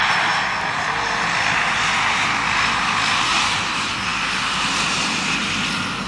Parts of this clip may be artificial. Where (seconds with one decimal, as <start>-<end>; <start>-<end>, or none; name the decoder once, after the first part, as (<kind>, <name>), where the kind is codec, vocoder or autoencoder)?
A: none